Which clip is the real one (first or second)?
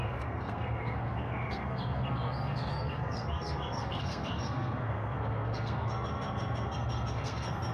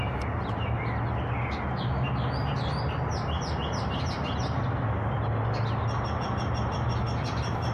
second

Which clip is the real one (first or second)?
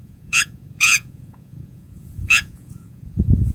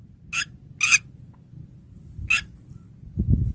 second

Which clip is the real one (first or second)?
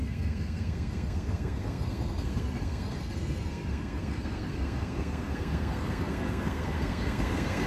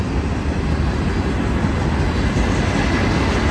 second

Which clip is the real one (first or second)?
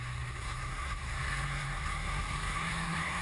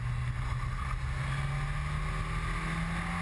second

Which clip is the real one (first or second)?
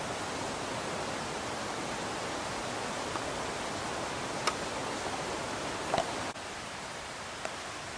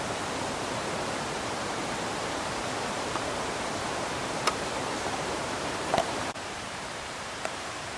first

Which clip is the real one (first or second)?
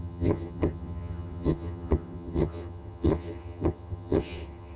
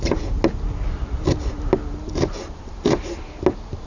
second